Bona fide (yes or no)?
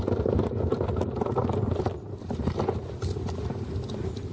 yes